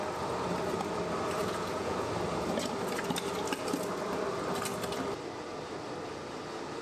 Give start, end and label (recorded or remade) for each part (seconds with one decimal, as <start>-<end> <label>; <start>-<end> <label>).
0.0-1.4 recorded; 1.4-2.1 remade; 2.1-6.8 recorded